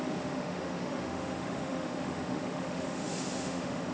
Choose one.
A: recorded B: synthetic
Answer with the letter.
B